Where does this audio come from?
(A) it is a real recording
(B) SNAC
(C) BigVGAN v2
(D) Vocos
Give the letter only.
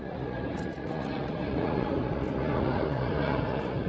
D